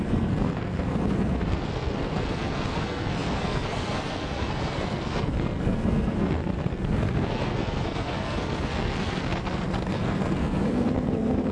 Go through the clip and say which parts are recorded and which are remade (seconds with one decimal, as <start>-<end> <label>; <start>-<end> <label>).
0.0-11.5 remade